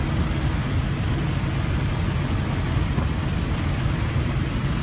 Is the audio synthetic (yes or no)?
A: no